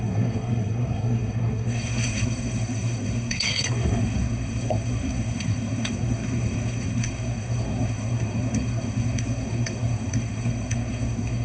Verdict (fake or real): fake